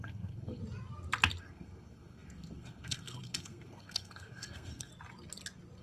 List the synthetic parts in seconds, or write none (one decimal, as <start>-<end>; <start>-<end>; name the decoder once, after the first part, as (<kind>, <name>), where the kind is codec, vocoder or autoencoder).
0.0-0.6 (codec, SNAC); 1.4-4.9

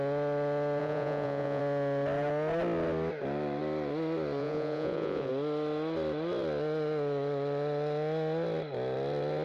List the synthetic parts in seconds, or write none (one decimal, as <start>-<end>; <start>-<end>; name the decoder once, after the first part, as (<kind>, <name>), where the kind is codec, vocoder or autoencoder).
0.8-1.6 (vocoder, Vocos); 4.4-5.3

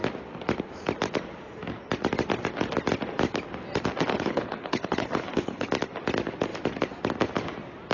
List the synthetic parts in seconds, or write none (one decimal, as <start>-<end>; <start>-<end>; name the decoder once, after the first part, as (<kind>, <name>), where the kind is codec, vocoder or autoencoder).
4.1-5.7 (codec, HILCodec)